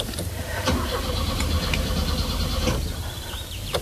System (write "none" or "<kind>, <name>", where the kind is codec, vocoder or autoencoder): vocoder, BigVGAN v2